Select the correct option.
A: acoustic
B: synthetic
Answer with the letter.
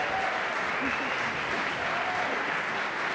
A